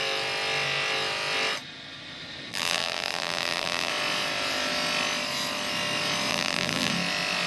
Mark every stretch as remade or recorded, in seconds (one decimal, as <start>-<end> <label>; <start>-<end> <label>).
0.0-2.5 recorded; 2.5-3.9 remade; 3.9-6.3 recorded; 6.3-6.9 remade; 6.9-7.5 recorded